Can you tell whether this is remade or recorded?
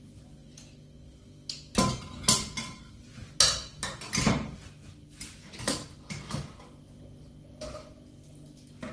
recorded